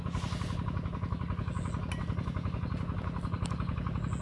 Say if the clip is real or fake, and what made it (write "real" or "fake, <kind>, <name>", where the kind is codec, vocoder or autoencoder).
real